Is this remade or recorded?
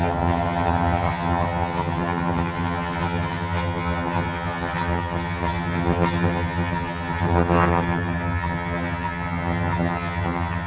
remade